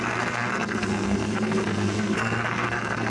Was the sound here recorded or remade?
remade